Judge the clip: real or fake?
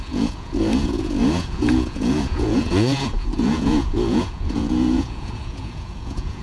fake